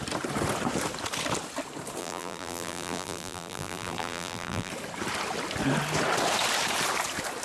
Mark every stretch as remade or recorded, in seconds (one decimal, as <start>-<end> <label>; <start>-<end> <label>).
0.0-2.0 recorded; 2.0-4.7 remade; 4.7-7.4 recorded